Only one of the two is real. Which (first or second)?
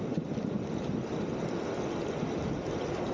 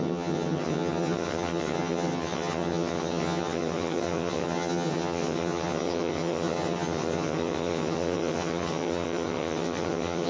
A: first